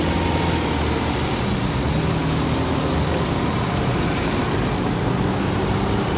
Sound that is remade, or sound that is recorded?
recorded